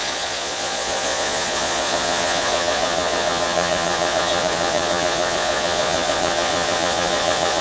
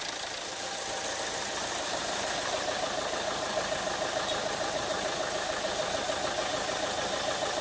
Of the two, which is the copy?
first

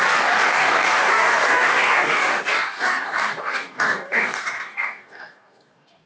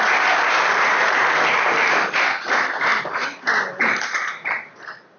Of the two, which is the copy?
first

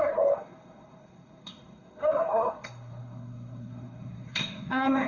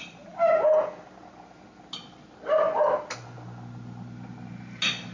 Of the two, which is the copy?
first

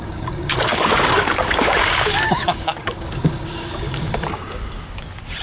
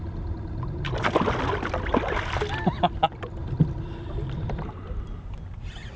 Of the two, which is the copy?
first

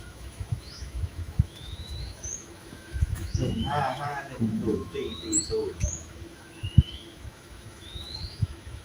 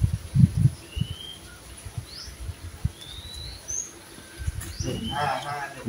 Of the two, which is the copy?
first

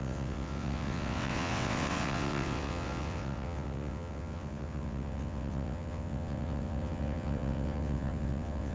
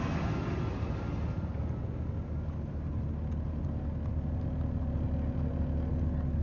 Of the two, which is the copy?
first